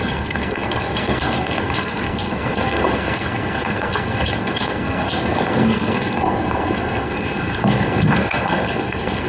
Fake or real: fake